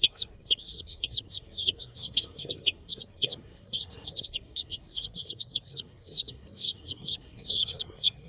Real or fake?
fake